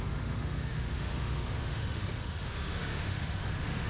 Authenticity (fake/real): fake